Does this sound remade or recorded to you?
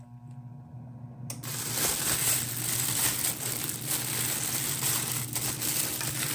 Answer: recorded